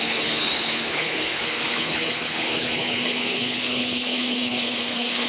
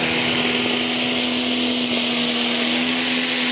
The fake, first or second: first